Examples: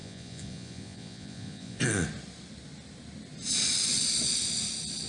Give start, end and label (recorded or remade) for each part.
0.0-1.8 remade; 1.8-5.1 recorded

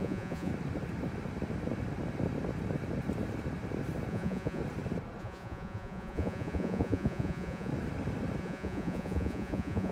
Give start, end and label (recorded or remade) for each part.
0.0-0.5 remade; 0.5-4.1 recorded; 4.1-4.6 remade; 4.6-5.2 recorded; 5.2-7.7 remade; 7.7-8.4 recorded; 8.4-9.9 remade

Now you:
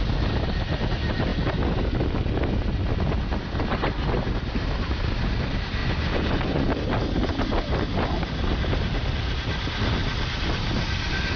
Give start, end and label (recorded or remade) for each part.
0.0-5.8 recorded; 5.8-6.7 remade; 6.7-11.4 recorded